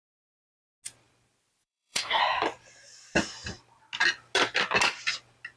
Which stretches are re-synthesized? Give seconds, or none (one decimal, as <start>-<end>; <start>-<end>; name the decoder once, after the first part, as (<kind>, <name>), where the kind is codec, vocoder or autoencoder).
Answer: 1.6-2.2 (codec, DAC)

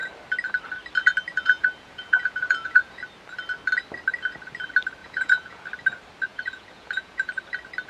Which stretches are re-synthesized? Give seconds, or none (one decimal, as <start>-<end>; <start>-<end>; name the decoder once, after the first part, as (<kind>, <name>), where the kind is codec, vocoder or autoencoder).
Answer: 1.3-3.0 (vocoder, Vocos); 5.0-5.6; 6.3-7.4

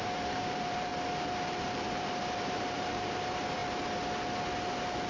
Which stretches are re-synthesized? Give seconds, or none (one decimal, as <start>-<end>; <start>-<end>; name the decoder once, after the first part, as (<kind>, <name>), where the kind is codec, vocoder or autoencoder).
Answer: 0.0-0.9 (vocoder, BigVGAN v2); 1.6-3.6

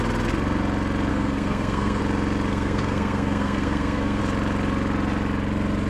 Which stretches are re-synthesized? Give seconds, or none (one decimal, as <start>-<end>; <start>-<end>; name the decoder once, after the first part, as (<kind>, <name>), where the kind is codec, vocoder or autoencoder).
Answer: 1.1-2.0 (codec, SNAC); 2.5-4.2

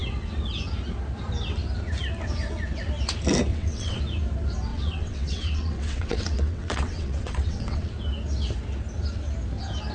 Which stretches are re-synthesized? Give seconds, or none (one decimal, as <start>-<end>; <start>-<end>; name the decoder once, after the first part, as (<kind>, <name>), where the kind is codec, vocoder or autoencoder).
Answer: 3.5-4.0 (vocoder, WaveNeXt); 4.7-7.9

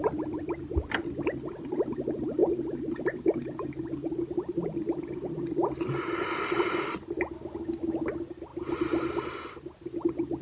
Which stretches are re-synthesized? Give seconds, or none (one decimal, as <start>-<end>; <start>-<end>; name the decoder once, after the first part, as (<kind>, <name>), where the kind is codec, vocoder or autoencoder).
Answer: none

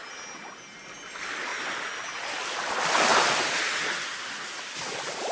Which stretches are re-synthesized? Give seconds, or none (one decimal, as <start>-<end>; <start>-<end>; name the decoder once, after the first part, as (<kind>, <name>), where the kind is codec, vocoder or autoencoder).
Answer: 3.1-3.7 (vocoder, BigVGAN v2)

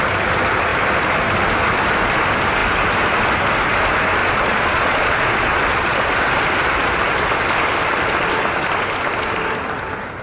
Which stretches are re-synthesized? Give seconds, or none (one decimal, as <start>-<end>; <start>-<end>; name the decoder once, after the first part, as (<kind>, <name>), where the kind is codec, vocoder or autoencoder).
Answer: 4.2-6.1 (vocoder, Vocos)